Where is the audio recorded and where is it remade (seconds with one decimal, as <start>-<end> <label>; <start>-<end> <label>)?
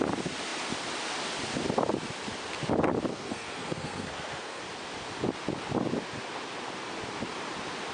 0.0-3.1 recorded; 3.1-4.6 remade; 4.6-7.9 recorded